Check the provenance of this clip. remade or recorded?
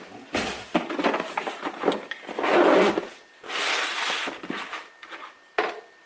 recorded